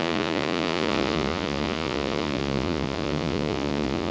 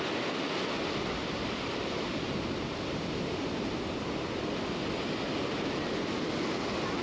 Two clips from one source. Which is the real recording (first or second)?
second